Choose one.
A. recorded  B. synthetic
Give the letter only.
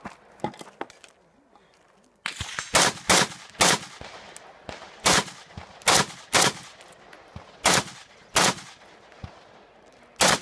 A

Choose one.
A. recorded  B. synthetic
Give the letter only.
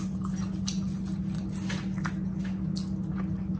A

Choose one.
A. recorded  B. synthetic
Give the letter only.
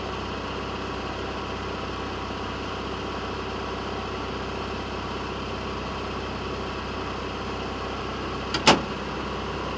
A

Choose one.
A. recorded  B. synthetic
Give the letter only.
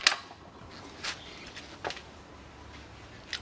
A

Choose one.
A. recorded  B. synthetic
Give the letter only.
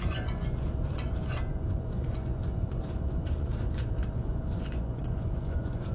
B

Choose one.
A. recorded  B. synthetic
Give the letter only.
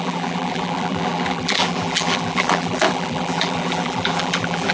B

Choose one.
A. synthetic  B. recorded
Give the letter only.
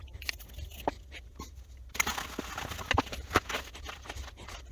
B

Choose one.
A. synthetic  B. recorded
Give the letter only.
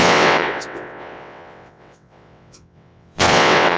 A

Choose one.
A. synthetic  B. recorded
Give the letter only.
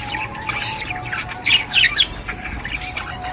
B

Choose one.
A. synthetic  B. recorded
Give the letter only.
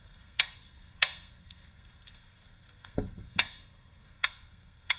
A